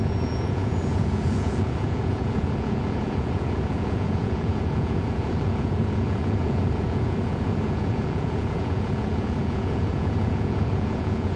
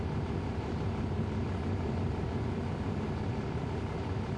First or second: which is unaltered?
second